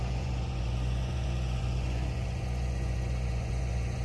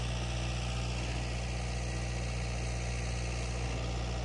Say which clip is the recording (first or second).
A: second